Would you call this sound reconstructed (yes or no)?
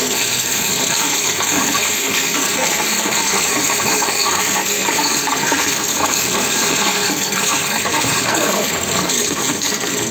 yes